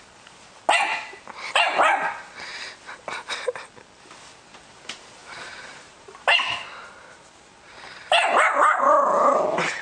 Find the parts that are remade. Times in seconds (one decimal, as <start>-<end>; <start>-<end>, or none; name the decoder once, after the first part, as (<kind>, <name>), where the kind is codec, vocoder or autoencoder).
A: 2.5-3.6 (vocoder, BigVGAN v2); 5.2-8.8